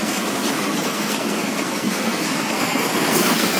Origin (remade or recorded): remade